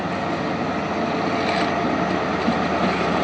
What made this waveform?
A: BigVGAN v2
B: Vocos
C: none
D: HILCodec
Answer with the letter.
C